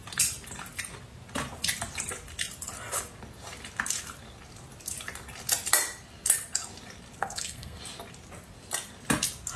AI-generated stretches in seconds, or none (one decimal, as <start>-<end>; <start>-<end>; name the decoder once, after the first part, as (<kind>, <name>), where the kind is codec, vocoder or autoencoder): 7.2-7.8 (codec, SNAC)